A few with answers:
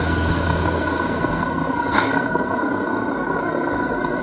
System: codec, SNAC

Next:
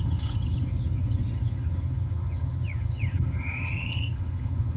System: vocoder, HiFi-GAN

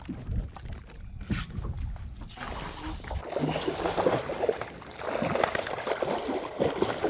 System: none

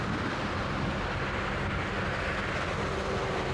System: none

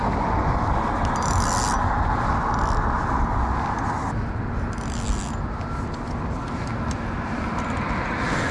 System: none